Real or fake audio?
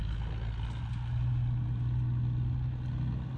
real